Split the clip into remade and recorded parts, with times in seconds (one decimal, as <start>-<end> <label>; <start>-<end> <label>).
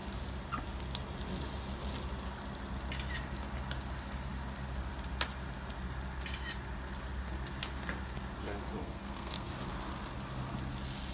0.0-8.8 recorded; 8.8-9.5 remade; 9.5-11.1 recorded